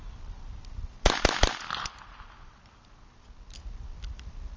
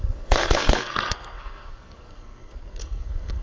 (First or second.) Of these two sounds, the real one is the first